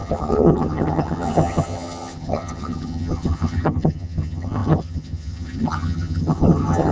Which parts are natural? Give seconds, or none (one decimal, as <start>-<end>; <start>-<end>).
none